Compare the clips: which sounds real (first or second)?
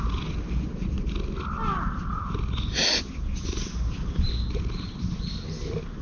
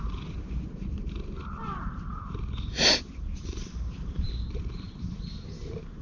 first